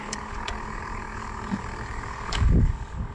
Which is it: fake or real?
fake